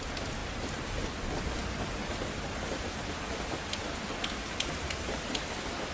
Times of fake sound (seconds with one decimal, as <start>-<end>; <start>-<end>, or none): none